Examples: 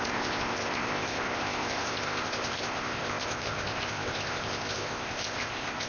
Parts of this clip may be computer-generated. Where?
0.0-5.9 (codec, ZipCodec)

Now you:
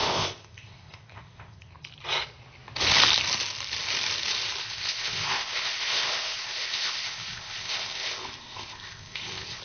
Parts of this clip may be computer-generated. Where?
0.0-1.7 (codec, ZipCodec); 4.6-9.6

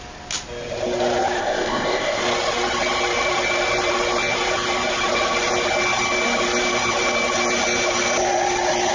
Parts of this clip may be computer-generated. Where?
1.4-2.2 (codec, ZipCodec)

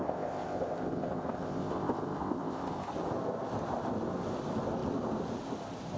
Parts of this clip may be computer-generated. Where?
0.0-2.9 (codec, ZipCodec)

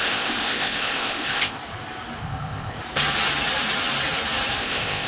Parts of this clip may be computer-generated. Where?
0.0-1.6 (codec, ZipCodec); 2.2-2.8; 4.6-5.1